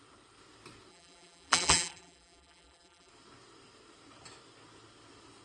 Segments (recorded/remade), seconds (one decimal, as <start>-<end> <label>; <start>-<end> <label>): 0.0-0.9 recorded; 0.9-3.1 remade; 3.1-5.4 recorded